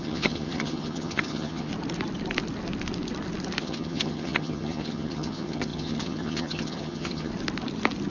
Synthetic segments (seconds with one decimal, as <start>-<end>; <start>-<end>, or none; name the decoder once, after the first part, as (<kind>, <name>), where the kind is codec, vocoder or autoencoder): 0.0-1.7 (vocoder, HiFi-GAN); 3.6-7.3